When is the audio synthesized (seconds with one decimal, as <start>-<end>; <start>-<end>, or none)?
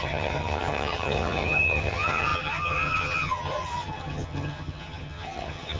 0.0-5.8